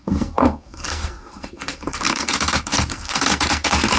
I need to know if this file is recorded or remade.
remade